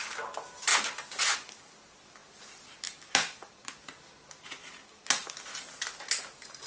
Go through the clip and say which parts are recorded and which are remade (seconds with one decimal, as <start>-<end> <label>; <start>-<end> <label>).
0.0-6.7 recorded